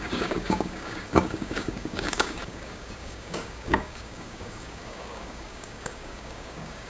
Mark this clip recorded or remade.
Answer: remade